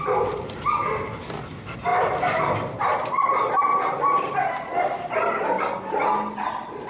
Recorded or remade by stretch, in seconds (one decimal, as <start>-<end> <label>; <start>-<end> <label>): 0.0-6.9 recorded